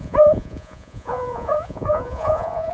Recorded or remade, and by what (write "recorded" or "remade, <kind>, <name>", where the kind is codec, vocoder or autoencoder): remade, vocoder, Vocos